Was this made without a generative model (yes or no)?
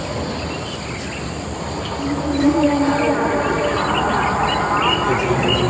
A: yes